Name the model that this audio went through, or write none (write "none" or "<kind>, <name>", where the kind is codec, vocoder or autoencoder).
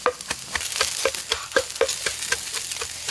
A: none